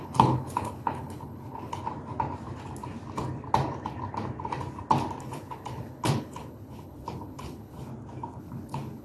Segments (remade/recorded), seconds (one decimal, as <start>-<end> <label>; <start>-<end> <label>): 0.0-1.8 remade; 1.8-5.2 recorded; 5.2-7.9 remade; 7.9-8.4 recorded; 8.4-9.0 remade